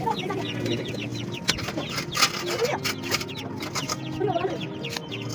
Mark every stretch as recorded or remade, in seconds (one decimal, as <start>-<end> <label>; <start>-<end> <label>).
0.0-5.3 recorded